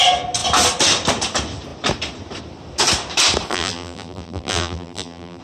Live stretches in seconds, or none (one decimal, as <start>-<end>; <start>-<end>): 0.0-3.5